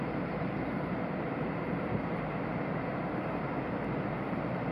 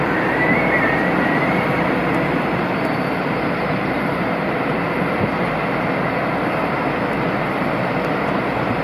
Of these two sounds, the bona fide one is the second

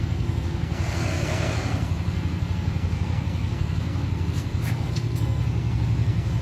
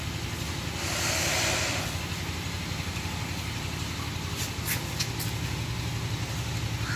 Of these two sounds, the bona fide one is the second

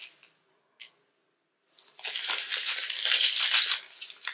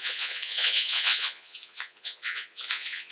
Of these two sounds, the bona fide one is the first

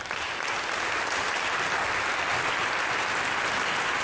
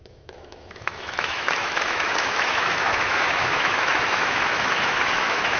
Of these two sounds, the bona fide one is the first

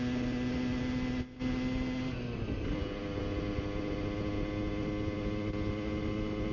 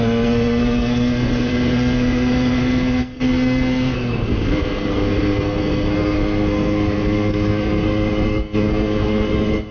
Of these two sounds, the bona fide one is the first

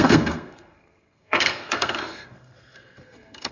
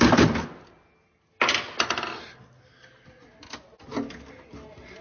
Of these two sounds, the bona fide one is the second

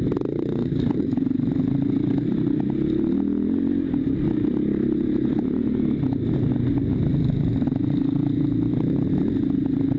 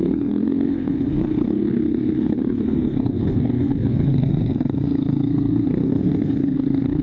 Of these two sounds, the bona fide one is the first